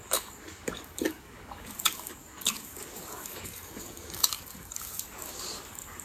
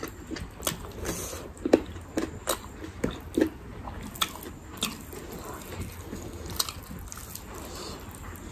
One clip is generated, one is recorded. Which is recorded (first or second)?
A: second